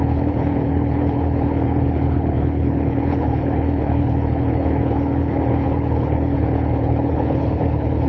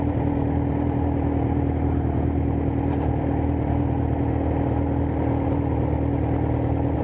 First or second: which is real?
second